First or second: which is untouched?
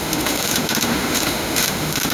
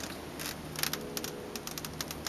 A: second